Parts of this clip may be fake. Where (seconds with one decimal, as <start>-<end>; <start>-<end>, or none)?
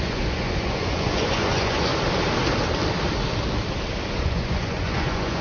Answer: 0.0-1.9; 4.1-5.4